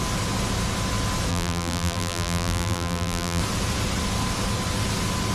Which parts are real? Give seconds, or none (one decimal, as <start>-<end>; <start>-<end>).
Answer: 0.0-1.3; 3.4-5.3

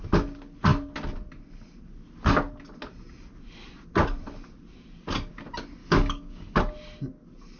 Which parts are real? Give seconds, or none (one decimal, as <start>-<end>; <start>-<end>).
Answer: 0.0-5.8; 6.6-7.6

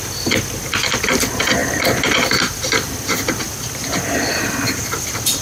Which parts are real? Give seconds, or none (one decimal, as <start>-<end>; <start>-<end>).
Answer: 0.0-5.4

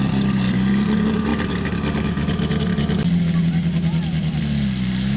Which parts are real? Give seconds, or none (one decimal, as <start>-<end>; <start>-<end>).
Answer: 0.0-5.2

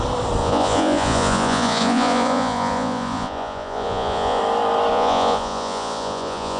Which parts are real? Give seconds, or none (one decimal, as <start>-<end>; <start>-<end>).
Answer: 0.0-0.4; 4.4-4.9

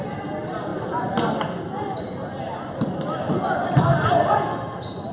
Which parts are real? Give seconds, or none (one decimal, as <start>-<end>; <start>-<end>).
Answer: 0.0-5.1